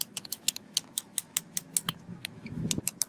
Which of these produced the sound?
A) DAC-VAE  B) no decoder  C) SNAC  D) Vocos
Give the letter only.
A